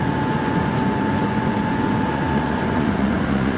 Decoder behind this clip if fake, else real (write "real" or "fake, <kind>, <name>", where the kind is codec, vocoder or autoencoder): fake, vocoder, Vocos